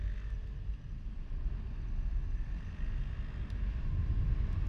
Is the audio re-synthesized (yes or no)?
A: no